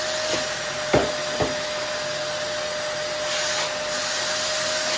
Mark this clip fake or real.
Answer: real